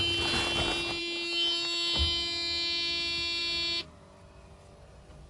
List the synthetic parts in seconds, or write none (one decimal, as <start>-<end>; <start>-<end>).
none